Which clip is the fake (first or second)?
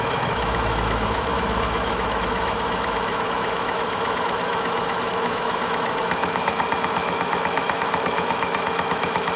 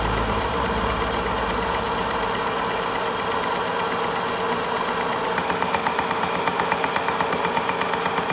first